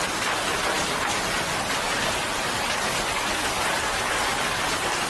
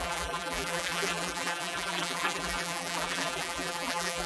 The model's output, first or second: second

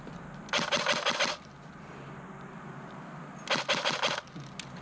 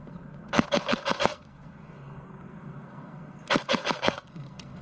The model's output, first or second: second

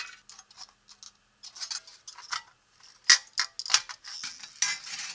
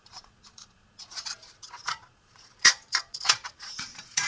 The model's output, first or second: second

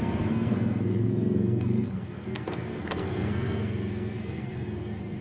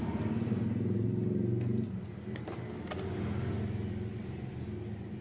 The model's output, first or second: first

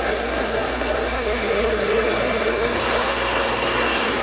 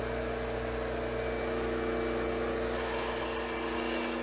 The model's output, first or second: first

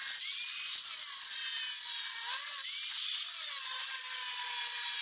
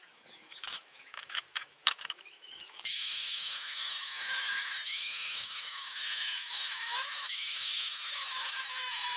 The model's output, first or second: second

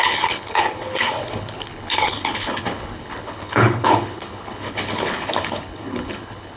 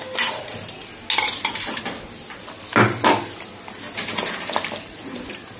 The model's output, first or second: first